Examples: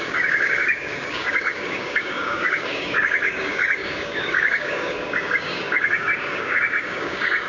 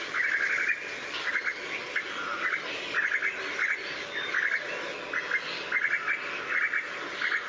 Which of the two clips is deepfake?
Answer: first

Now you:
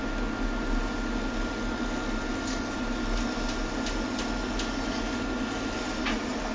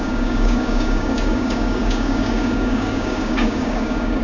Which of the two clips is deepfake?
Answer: second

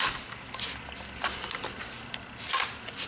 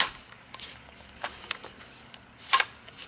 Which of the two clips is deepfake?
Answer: second